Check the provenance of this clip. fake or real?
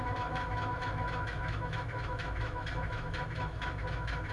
fake